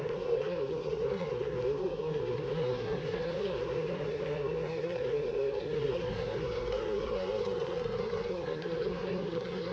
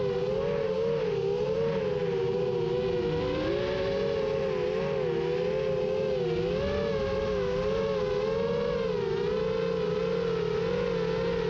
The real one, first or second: second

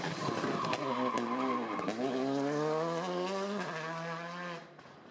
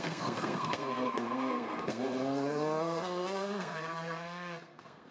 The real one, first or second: first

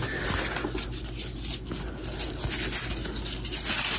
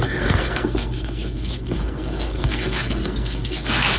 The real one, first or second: first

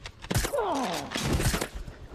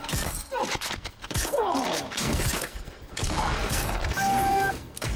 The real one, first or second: first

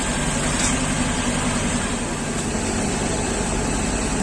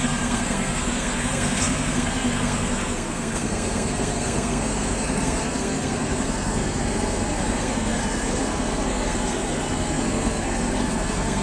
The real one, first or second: first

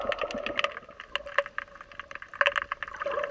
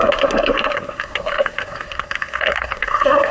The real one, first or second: first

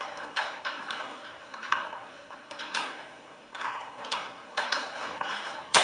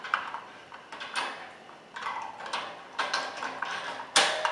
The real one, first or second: second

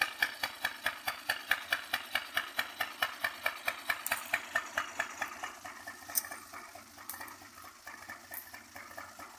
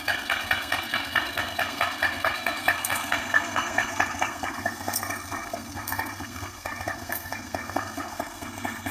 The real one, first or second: first